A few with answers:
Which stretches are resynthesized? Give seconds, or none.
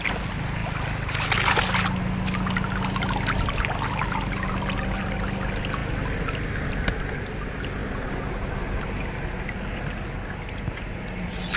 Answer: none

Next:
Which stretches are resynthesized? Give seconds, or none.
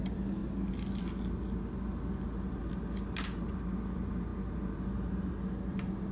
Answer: none